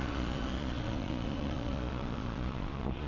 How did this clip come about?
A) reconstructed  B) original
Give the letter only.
A